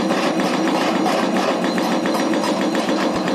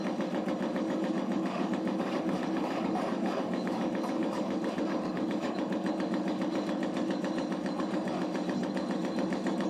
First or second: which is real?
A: first